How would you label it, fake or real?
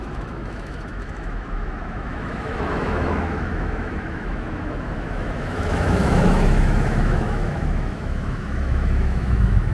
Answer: fake